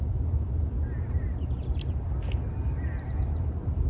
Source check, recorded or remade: recorded